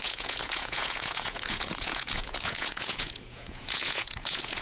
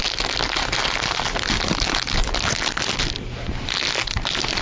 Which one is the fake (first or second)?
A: first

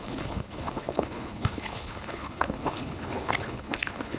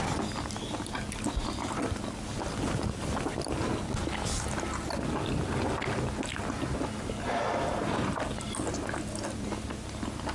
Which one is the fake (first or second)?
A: first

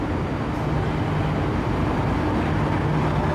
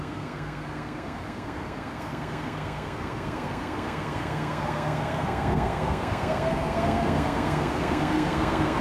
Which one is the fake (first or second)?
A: second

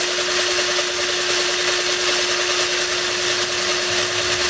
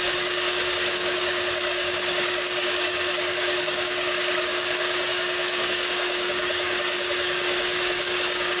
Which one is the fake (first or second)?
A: second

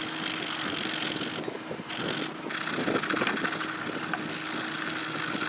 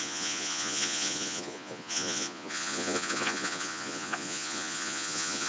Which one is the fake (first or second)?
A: second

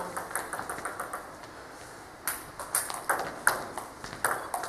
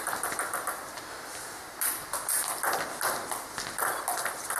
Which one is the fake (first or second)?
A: second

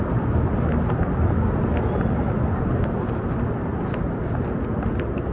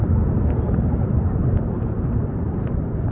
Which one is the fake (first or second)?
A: second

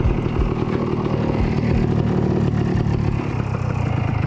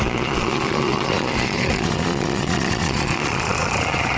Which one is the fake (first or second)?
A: second